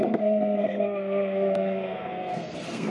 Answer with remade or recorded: remade